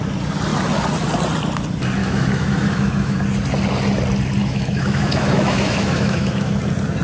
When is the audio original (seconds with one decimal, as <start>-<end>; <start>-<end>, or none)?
0.0-2.0; 3.2-4.4; 6.6-7.0